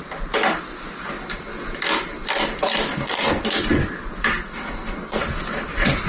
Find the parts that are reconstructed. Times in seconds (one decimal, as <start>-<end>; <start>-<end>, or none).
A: 2.9-3.4; 4.3-5.2